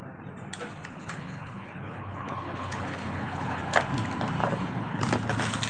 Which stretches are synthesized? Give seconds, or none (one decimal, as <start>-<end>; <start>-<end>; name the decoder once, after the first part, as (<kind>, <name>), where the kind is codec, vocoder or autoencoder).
0.9-3.6 (codec, HILCodec); 4.4-5.0